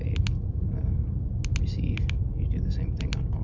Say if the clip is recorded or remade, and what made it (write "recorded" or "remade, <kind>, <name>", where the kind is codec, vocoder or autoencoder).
recorded